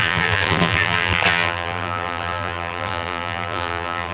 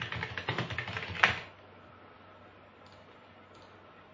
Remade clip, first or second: first